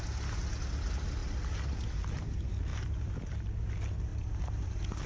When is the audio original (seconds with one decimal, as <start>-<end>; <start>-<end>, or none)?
0.0-1.2; 2.2-2.7; 3.6-4.1